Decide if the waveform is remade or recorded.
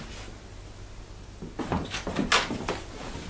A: recorded